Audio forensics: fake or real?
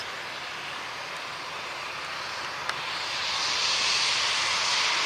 real